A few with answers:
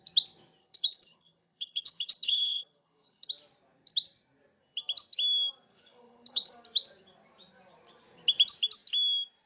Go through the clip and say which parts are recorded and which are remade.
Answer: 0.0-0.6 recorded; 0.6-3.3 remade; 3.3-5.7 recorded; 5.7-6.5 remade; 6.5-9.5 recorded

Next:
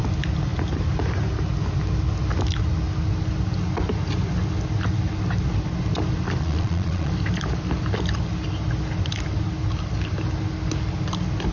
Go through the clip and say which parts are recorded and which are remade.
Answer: 0.0-6.4 recorded; 6.4-7.1 remade; 7.1-11.5 recorded

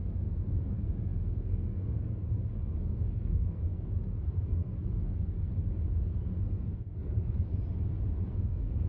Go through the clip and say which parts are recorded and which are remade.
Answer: 0.0-5.5 remade; 5.5-6.0 recorded; 6.0-7.6 remade; 7.6-8.3 recorded; 8.3-8.9 remade

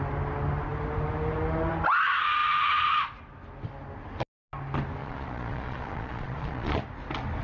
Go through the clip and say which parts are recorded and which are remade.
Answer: 0.0-5.0 recorded; 5.0-6.8 remade; 6.8-7.4 recorded